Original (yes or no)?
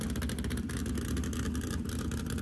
yes